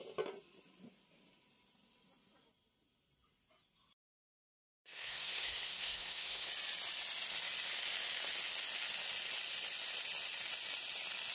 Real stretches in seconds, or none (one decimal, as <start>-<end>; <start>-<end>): 0.0-4.5; 6.5-11.3